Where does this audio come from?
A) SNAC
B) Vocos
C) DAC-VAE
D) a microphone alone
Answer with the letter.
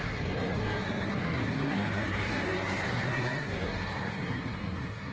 A